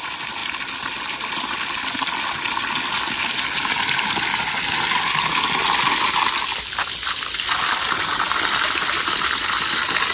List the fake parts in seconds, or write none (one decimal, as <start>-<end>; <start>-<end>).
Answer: none